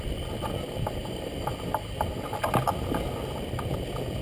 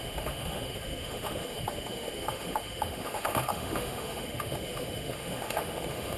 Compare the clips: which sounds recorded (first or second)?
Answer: first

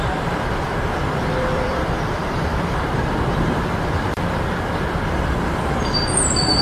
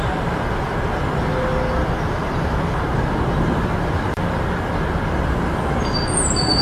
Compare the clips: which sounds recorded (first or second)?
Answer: second